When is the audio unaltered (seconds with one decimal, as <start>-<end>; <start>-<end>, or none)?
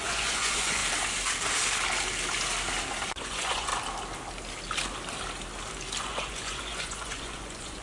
0.8-3.1; 3.7-6.0